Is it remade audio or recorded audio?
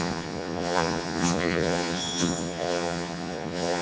remade